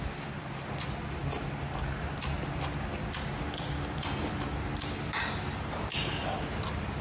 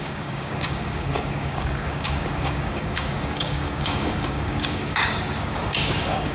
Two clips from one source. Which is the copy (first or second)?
second